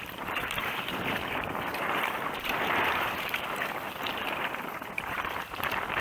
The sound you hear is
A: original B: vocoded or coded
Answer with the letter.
B